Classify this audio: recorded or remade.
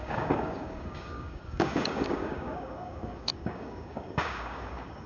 remade